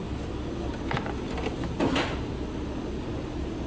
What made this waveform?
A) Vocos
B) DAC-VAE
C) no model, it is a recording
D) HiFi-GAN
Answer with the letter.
C